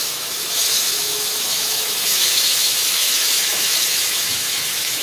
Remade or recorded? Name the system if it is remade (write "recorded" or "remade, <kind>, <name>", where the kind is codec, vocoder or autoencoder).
remade, autoencoder, DAC-VAE